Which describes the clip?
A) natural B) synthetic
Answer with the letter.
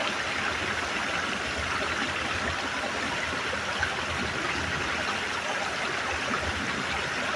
A